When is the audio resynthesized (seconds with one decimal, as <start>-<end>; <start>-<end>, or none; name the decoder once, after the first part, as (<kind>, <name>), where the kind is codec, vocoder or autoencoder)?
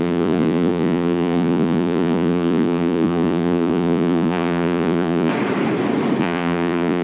0.0-5.3 (vocoder, Vocos); 6.2-7.0